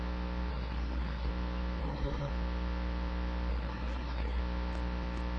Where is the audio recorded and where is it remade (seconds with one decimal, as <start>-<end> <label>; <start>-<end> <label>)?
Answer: 0.0-0.5 recorded; 0.5-1.3 remade; 1.3-1.8 recorded; 1.8-2.3 remade; 2.3-3.5 recorded; 3.5-4.4 remade; 4.4-5.4 recorded